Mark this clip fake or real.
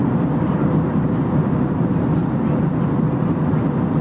real